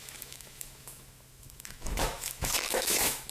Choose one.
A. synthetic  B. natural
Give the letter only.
A